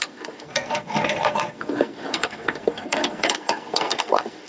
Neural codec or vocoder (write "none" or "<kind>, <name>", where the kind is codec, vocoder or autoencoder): codec, SNAC